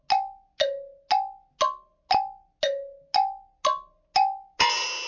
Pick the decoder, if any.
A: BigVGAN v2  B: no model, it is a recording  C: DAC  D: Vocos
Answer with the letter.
B